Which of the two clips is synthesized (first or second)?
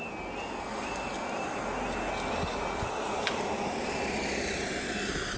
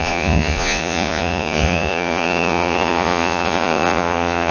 second